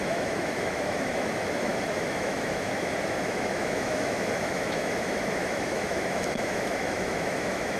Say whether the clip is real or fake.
fake